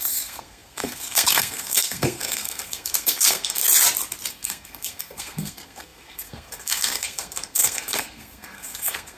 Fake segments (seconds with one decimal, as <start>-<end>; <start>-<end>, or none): 0.0-3.6; 4.3-9.2